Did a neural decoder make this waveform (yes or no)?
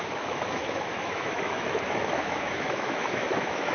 yes